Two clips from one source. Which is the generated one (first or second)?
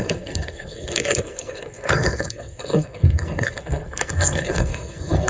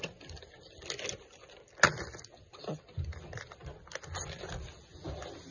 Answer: first